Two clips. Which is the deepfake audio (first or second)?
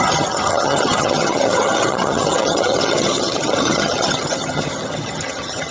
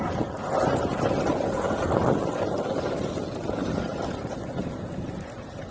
first